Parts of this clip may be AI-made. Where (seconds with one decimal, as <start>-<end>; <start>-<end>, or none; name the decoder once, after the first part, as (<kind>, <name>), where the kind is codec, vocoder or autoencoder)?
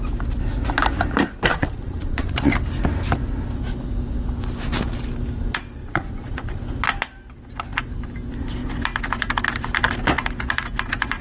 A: 1.5-2.5 (vocoder, Vocos); 5.8-6.6